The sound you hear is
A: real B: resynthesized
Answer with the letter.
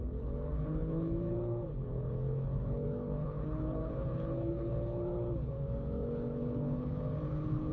B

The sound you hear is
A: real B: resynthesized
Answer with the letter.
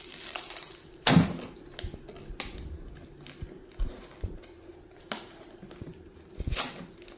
A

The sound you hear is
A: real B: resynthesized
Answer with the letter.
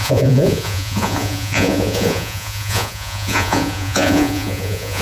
B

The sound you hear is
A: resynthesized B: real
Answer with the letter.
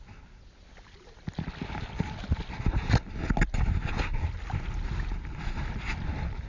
B